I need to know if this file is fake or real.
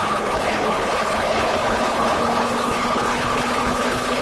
fake